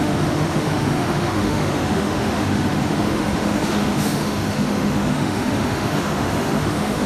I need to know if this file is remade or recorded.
remade